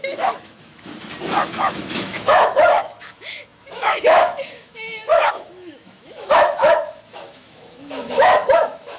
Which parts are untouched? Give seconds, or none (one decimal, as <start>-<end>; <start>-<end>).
0.9-1.5